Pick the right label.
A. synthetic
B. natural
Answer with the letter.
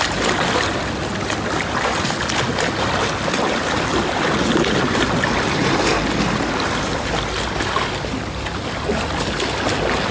B